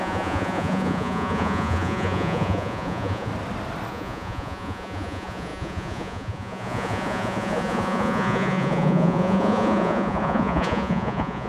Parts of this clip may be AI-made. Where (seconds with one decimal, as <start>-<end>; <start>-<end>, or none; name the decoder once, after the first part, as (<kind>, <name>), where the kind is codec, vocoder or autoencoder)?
0.0-3.3 (vocoder, Vocos); 3.9-11.5